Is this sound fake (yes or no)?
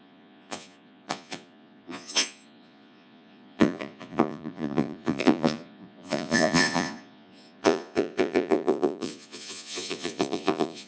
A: yes